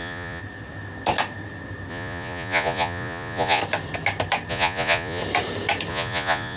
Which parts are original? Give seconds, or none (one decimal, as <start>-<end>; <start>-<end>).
0.4-1.9; 3.6-4.5; 5.2-5.9